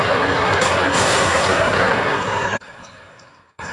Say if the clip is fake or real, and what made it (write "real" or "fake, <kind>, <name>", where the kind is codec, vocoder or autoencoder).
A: fake, codec, SNAC